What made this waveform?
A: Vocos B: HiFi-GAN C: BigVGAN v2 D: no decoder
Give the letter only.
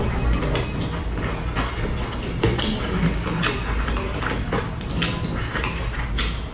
D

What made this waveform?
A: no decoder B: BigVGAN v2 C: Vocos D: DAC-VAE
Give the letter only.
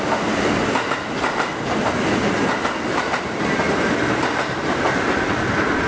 A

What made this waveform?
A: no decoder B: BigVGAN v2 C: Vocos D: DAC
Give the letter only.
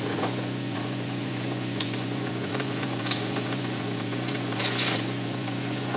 C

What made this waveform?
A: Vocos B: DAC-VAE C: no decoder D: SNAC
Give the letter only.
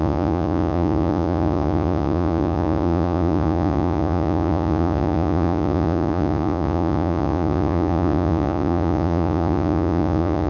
A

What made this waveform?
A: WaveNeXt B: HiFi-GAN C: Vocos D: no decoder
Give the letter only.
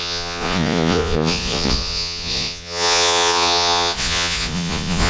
C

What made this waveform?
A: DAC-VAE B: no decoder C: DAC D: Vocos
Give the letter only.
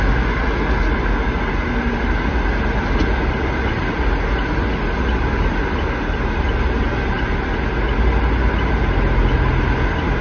B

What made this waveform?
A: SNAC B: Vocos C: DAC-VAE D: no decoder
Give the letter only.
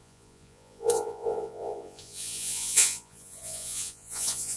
B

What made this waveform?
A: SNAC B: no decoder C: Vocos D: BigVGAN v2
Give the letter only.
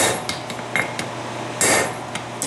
B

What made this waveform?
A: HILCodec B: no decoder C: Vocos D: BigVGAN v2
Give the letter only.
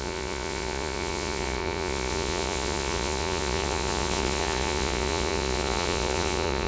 C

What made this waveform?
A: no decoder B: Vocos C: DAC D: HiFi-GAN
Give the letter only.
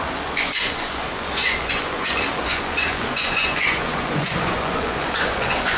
B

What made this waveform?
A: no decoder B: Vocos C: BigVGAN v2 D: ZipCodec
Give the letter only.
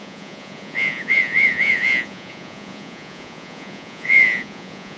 B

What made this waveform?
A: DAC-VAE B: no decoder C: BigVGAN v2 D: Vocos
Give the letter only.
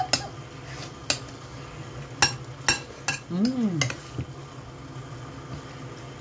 B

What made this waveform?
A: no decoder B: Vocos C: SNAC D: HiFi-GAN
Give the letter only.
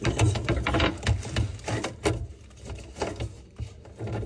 A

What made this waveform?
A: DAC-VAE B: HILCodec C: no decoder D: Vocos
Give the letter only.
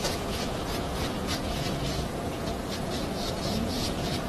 D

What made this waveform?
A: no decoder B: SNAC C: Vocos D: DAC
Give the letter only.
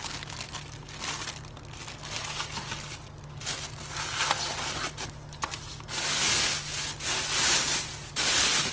A